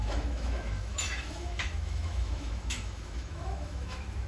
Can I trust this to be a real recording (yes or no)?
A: no